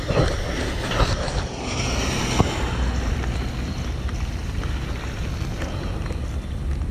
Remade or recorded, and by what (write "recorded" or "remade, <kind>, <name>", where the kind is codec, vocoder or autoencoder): recorded